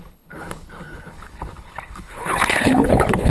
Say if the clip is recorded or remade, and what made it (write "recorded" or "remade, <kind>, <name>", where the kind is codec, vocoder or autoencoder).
remade, codec, HILCodec